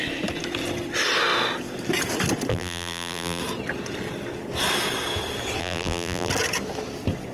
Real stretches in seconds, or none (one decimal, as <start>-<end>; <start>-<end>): 0.0-2.5; 3.4-5.6; 6.3-7.3